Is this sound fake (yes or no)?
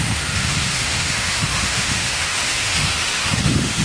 yes